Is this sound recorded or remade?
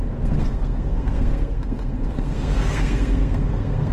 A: remade